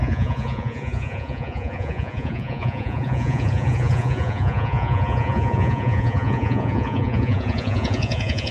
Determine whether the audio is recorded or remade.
remade